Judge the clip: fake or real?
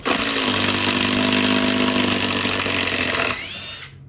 real